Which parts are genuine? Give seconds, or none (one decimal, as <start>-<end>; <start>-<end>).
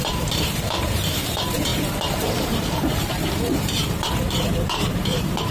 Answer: none